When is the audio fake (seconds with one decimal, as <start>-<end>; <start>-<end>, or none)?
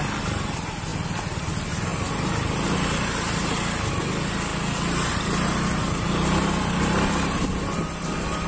none